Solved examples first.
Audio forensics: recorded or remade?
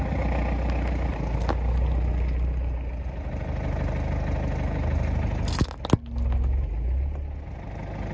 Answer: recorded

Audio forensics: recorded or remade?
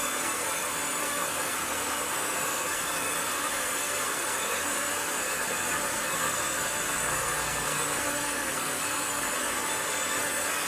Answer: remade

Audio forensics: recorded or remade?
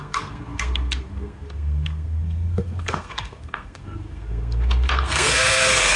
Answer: remade